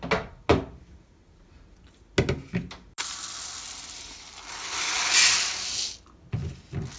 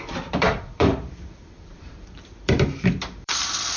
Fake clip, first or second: second